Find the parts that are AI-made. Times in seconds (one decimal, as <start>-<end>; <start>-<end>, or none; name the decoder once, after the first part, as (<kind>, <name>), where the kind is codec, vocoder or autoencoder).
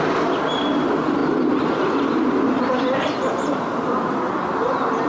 none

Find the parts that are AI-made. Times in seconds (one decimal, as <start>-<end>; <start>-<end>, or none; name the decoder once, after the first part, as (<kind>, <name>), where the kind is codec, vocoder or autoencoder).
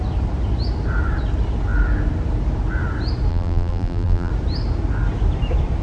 3.3-4.3 (vocoder, BigVGAN v2)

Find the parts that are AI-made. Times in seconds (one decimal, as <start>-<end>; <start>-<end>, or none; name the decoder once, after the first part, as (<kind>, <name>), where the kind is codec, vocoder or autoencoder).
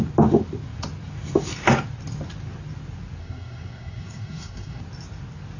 3.2-4.8 (codec, SNAC)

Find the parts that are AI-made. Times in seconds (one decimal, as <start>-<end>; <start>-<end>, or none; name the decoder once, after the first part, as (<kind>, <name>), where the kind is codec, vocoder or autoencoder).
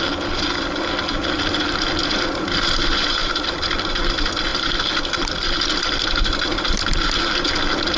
none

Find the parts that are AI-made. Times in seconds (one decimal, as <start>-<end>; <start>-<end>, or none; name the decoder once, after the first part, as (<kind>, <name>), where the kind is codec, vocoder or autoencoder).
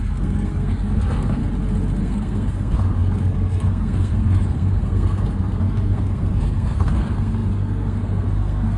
0.0-1.4 (codec, SNAC); 2.0-8.8